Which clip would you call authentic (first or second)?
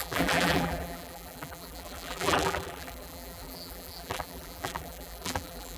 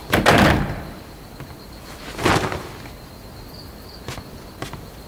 second